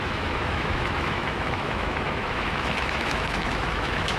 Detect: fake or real fake